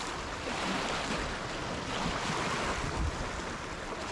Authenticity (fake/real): real